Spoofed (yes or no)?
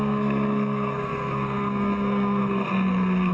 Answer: yes